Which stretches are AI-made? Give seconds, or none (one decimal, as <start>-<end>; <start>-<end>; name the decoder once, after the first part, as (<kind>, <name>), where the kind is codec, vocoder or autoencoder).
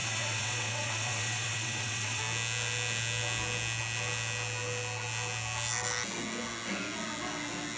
0.0-2.2 (vocoder, WaveNeXt)